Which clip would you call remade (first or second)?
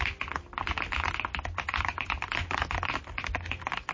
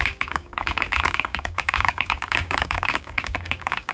second